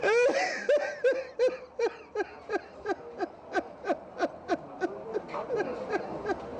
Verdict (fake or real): real